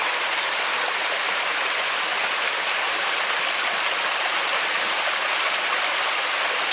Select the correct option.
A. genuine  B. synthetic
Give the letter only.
A